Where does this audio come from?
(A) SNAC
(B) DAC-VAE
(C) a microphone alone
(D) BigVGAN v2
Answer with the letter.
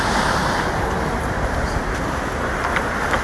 C